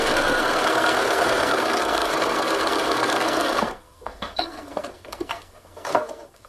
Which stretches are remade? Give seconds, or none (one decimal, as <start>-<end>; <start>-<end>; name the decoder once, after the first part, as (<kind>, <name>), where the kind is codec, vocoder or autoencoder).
0.0-6.5 (codec, SNAC)